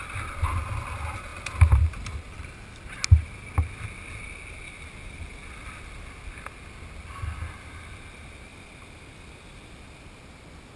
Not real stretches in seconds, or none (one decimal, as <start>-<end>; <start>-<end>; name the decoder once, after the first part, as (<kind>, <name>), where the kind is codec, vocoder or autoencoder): 8.5-9.7 (vocoder, BigVGAN v2)